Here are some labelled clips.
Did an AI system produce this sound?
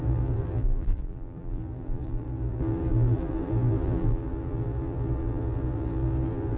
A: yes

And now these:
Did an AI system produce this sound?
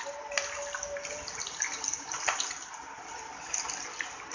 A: no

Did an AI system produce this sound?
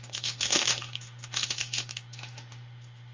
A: yes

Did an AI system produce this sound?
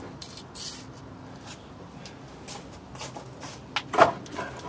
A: no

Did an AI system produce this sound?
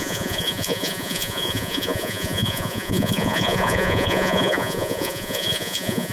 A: yes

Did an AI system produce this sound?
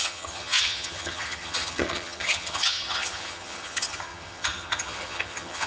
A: yes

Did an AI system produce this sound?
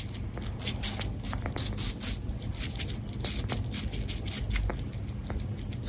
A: no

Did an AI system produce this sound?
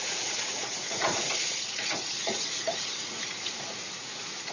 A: yes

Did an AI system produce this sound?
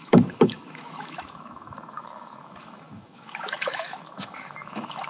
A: yes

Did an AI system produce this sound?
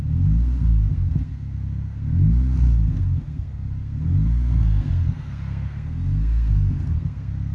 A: yes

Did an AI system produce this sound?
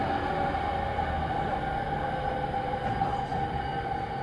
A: no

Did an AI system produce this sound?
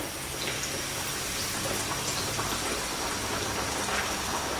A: no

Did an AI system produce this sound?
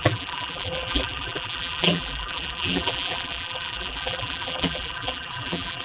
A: yes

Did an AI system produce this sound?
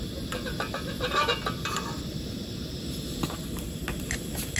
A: no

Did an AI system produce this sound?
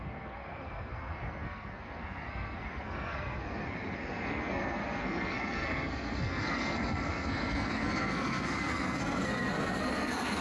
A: yes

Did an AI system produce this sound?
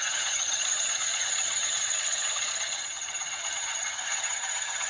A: yes